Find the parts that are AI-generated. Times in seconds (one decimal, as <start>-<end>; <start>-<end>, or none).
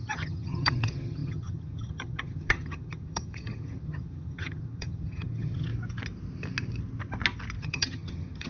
0.0-5.7; 7.6-8.5